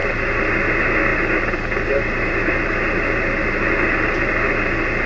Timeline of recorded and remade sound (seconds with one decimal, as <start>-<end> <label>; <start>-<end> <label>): 0.0-5.1 recorded